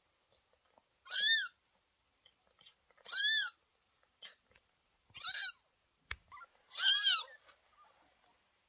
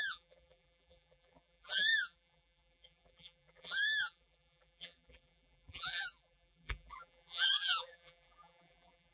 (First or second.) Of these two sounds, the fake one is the second